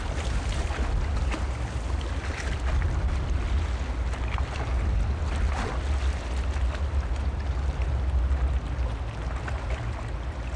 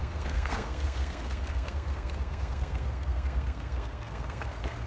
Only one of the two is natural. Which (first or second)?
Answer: first